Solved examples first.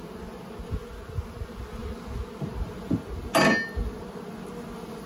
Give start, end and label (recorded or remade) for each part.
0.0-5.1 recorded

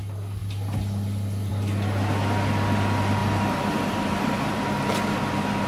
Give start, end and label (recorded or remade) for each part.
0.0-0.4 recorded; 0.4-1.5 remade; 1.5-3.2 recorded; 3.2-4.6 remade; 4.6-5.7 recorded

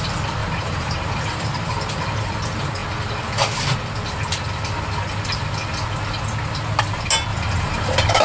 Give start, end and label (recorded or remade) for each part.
0.0-0.4 recorded; 0.4-2.3 remade; 2.3-7.3 recorded; 7.3-8.2 remade

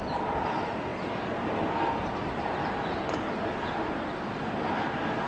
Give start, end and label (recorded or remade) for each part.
0.0-0.9 recorded; 0.9-1.6 remade; 1.6-5.3 recorded

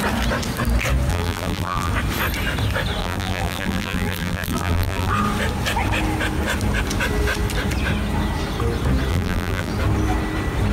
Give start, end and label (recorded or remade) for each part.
0.0-1.1 recorded; 1.1-1.9 remade; 1.9-3.0 recorded; 3.0-5.1 remade; 5.1-9.1 recorded; 9.1-9.7 remade; 9.7-10.7 recorded